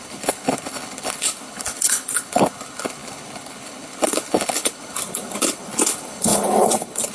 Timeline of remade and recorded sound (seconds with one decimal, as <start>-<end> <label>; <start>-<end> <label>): 0.0-7.1 remade